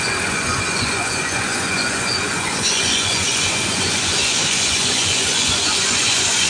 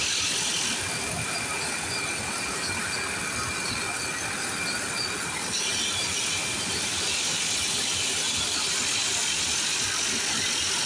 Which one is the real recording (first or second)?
second